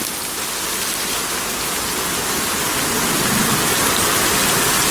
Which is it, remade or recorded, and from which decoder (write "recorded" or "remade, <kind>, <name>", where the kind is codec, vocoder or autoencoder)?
recorded